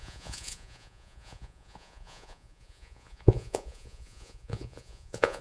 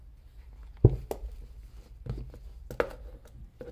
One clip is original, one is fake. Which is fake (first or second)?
first